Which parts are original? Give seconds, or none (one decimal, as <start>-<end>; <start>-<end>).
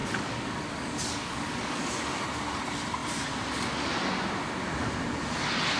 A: 1.9-5.8